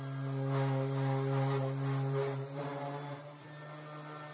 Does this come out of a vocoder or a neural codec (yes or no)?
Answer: no